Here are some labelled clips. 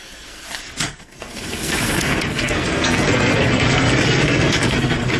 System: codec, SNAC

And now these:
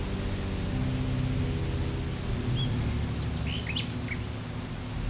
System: none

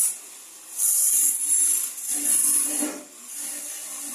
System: none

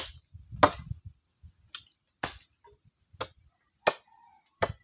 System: none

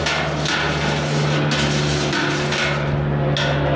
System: none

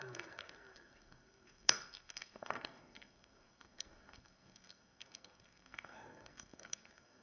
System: codec, SNAC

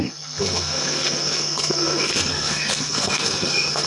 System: codec, SNAC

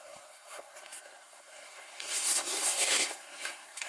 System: codec, SNAC